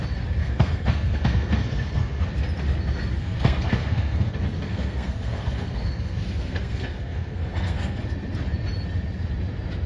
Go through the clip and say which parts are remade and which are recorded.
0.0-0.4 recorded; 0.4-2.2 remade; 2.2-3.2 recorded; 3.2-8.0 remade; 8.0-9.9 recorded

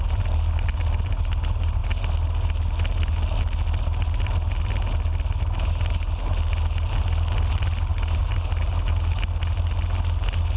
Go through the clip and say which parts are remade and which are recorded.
0.0-10.6 recorded

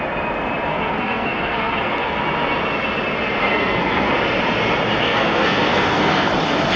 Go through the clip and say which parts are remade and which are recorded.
0.0-0.7 recorded; 0.7-2.2 remade; 2.2-3.4 recorded; 3.4-4.1 remade; 4.1-5.0 recorded; 5.0-6.3 remade; 6.3-6.8 recorded

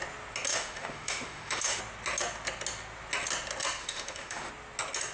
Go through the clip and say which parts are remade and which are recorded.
0.0-0.5 recorded; 0.5-1.8 remade; 1.8-3.8 recorded; 3.8-4.5 remade; 4.5-5.1 recorded

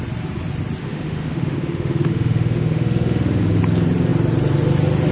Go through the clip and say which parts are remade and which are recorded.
0.0-0.8 recorded; 0.8-3.6 remade; 3.6-5.1 recorded